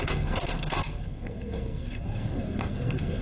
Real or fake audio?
fake